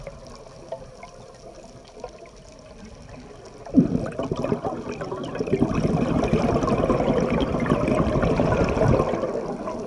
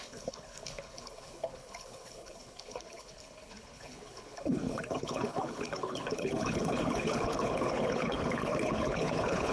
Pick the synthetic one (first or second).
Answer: second